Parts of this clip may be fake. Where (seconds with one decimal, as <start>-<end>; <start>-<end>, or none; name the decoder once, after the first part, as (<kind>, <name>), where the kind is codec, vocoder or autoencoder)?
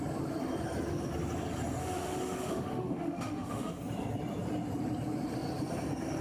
1.8-3.7 (autoencoder, DAC-VAE)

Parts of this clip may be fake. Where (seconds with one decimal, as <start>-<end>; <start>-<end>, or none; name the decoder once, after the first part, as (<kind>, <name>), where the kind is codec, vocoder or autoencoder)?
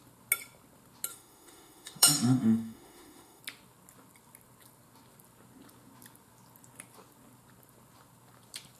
1.1-3.4 (autoencoder, DAC-VAE)